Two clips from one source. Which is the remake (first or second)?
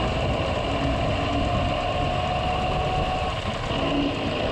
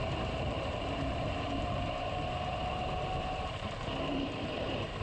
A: second